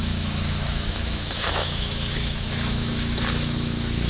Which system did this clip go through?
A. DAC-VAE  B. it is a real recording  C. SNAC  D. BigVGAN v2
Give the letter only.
A